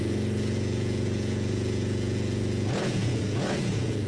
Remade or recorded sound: remade